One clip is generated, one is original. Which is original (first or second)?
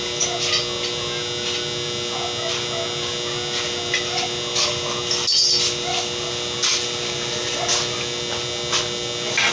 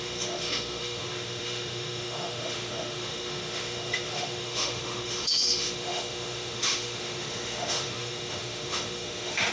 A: first